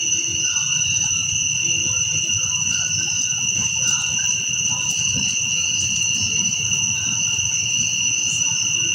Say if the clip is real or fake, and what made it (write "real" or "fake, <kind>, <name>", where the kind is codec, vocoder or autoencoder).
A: real